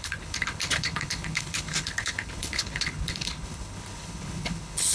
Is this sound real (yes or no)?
no